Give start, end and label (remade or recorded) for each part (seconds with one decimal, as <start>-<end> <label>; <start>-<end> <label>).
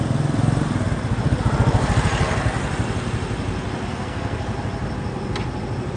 0.0-3.9 recorded; 3.9-4.4 remade; 4.4-6.0 recorded